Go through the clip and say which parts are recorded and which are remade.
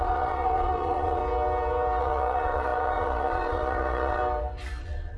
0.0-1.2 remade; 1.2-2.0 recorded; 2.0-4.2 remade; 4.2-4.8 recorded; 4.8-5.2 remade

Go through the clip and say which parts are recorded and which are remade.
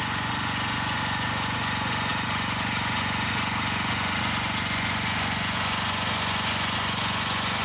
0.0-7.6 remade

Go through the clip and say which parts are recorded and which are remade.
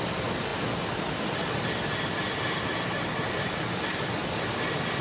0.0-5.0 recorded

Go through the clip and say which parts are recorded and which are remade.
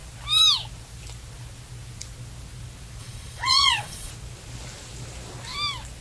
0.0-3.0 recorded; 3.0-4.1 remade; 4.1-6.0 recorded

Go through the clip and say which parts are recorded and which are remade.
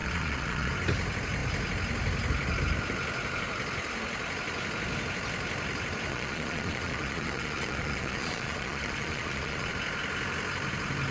0.0-0.7 remade; 0.7-6.1 recorded; 6.1-9.7 remade; 9.7-11.1 recorded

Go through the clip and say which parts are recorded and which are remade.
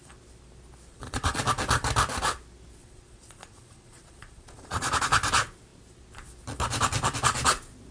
0.0-0.9 recorded; 0.9-1.4 remade; 1.4-2.8 recorded; 2.8-5.0 remade; 5.0-7.9 recorded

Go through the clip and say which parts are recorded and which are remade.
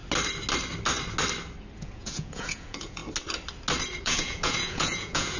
0.0-1.8 recorded; 1.8-3.0 remade; 3.0-4.0 recorded; 4.0-5.4 remade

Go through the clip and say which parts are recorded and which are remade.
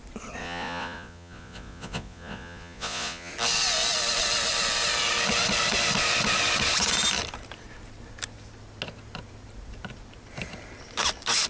0.0-0.4 recorded; 0.4-3.3 remade; 3.3-11.5 recorded